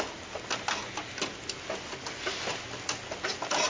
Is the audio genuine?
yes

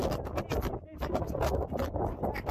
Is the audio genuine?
yes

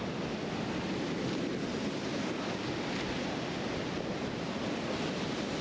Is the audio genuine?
yes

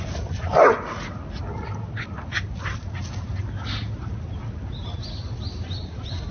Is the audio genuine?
yes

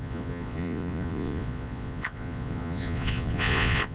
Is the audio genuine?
no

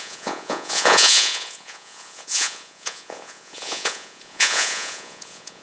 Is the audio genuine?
no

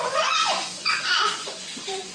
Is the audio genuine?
no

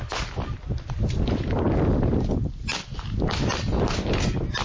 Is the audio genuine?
yes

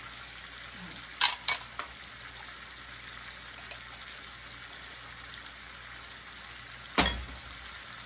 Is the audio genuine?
yes